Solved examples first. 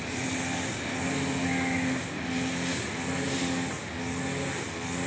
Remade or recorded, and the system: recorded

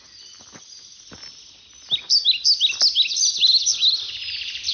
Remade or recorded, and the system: recorded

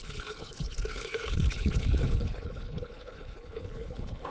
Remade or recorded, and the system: remade, codec, HILCodec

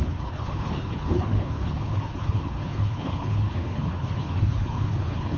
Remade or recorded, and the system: remade, codec, HILCodec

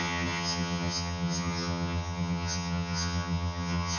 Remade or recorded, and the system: remade, vocoder, HiFi-GAN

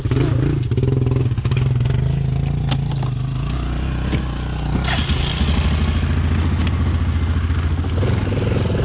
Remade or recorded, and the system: recorded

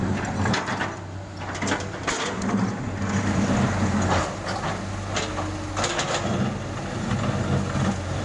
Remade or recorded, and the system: recorded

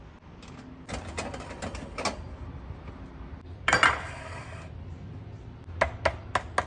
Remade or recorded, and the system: recorded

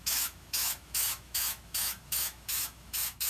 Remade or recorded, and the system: remade, autoencoder, DAC-VAE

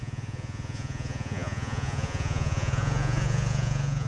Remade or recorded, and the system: remade, vocoder, Vocos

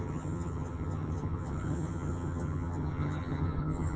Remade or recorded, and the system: remade, vocoder, HiFi-GAN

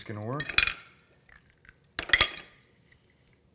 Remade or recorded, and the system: recorded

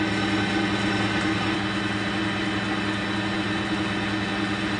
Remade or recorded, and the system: recorded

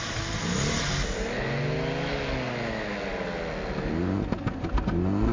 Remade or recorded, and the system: recorded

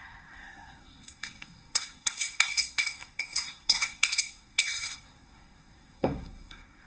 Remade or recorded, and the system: remade, codec, SNAC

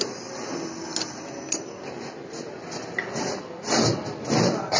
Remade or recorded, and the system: recorded